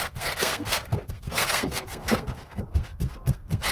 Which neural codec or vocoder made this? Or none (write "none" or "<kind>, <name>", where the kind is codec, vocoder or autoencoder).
codec, SNAC